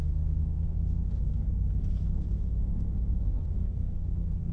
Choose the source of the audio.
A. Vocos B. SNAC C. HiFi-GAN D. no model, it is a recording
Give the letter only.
B